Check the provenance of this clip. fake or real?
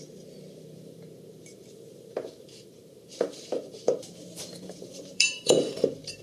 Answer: fake